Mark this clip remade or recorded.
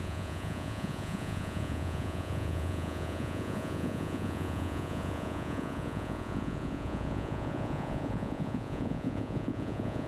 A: remade